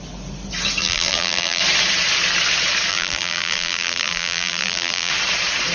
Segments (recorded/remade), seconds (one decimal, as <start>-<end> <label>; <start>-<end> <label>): 0.0-0.8 recorded; 0.8-1.6 remade; 1.6-2.9 recorded; 2.9-5.1 remade; 5.1-5.7 recorded